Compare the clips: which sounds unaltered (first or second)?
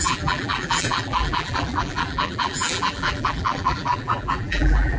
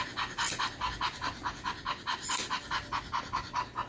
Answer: second